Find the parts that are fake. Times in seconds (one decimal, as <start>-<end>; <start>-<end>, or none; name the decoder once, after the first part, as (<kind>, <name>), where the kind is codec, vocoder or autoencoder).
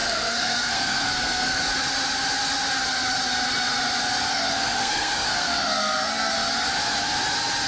0.0-1.6 (codec, SNAC); 4.3-6.3